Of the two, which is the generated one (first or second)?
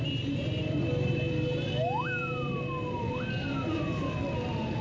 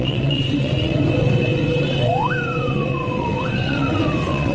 second